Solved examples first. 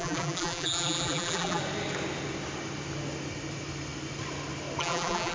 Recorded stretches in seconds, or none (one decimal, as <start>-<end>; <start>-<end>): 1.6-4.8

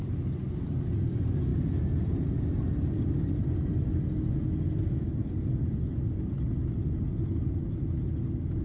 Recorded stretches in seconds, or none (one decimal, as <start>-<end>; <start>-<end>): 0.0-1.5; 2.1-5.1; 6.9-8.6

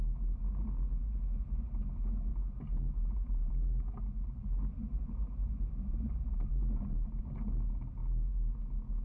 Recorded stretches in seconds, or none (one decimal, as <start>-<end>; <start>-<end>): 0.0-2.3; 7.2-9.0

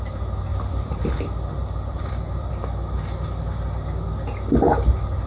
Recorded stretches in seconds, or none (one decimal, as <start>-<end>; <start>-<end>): 0.0-0.5; 1.1-1.6; 2.5-5.3

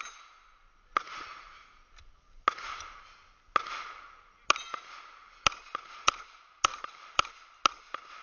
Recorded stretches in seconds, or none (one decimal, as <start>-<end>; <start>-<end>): 0.0-6.7; 7.3-8.2

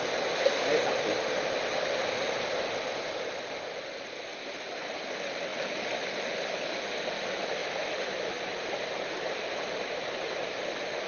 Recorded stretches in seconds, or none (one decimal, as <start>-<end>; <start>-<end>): 0.0-4.3; 5.1-7.6; 10.6-11.1